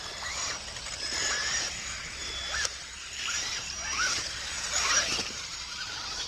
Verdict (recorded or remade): remade